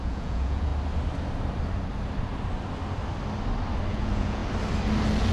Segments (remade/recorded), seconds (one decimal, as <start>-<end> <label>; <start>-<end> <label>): 0.0-0.7 remade; 0.7-3.9 recorded; 3.9-4.4 remade; 4.4-5.3 recorded